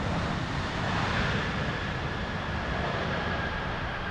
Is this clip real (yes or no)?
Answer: yes